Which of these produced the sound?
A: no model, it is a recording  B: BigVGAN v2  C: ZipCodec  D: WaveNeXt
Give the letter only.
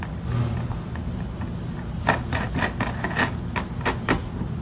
A